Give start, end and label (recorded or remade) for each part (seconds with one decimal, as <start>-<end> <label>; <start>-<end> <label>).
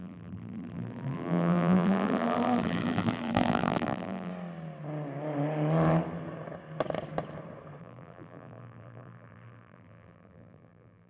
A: 0.0-4.3 remade; 4.3-7.8 recorded; 7.8-11.1 remade